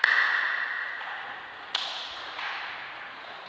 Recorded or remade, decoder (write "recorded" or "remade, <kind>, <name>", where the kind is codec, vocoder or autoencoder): remade, vocoder, Vocos